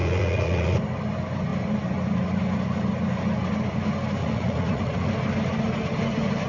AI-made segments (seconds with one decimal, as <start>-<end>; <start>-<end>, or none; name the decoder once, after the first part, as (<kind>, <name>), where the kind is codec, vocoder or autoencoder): 0.0-0.8 (vocoder, Vocos); 4.2-5.1